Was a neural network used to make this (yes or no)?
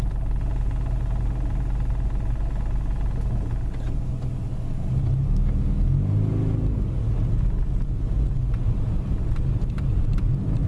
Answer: no